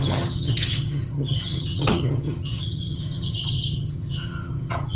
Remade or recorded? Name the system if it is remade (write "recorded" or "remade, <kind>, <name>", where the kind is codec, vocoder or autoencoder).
remade, vocoder, HiFi-GAN